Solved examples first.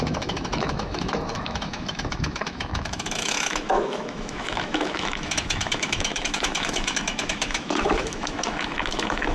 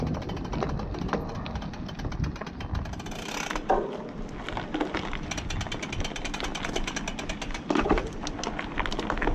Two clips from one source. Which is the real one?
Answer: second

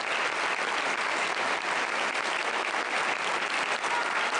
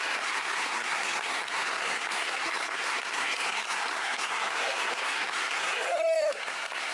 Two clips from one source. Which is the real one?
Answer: first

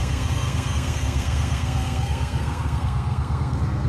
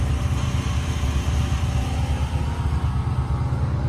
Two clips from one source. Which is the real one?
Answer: second